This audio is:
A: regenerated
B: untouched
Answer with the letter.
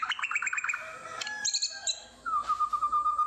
B